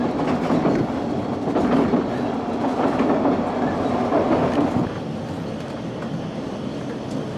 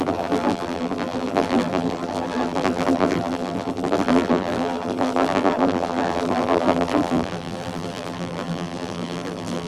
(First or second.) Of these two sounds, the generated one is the second